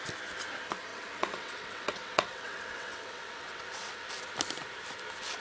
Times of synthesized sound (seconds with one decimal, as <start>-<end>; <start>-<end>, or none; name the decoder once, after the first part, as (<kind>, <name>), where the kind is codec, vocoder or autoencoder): 0.9-4.1 (vocoder, WaveNeXt)

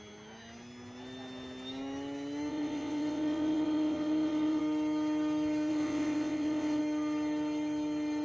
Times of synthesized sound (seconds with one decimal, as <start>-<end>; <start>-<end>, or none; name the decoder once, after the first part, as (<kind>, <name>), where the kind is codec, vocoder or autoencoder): 2.5-4.6 (vocoder, WaveNeXt); 5.7-6.8

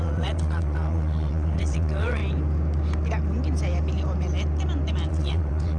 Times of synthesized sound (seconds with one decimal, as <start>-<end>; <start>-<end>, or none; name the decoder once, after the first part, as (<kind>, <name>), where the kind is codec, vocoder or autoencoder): 0.0-2.2 (vocoder, WaveNeXt); 5.1-5.8